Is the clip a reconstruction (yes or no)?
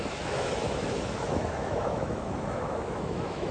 yes